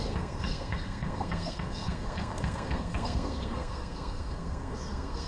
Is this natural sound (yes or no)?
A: no